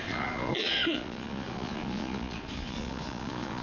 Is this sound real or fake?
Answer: fake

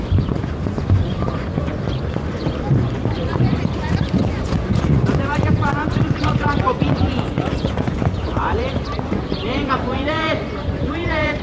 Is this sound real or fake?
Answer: fake